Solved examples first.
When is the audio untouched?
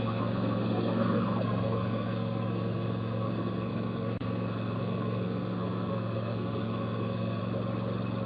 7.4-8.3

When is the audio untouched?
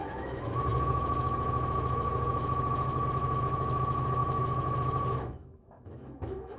none